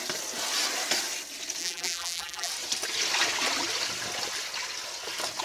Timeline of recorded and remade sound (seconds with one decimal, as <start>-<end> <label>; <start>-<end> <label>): 0.0-1.6 recorded; 1.6-2.5 remade; 2.5-5.4 recorded

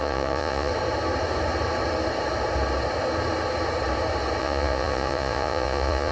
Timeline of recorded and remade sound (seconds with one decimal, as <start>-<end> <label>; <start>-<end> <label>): 0.0-0.7 remade; 0.7-4.4 recorded; 4.4-6.1 remade

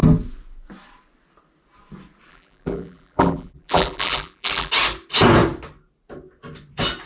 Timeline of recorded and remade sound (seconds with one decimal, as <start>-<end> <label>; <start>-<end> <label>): 0.0-2.3 recorded; 2.3-4.7 remade; 4.7-7.1 recorded

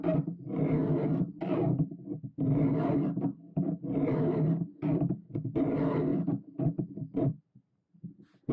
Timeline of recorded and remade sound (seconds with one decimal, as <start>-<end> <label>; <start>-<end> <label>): 0.0-8.5 recorded